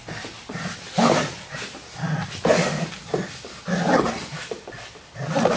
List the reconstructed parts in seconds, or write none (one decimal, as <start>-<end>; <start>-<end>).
none